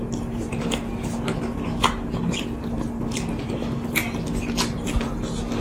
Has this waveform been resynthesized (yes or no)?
no